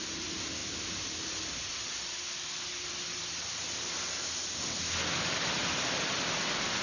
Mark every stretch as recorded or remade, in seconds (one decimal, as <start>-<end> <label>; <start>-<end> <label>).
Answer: 0.0-6.8 recorded